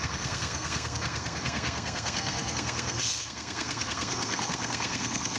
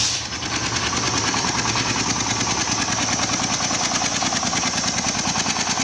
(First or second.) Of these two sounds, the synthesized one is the first